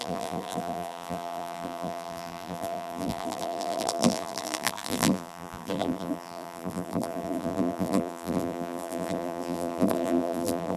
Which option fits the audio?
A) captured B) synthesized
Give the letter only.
B